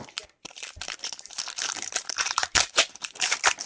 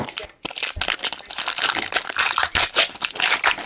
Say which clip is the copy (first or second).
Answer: first